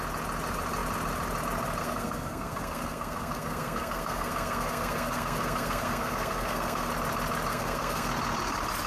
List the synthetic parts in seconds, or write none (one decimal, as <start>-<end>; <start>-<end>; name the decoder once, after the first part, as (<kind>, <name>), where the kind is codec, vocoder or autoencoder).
1.8-6.9 (codec, SNAC); 7.5-8.1